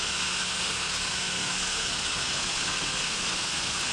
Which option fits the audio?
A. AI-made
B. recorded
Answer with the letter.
A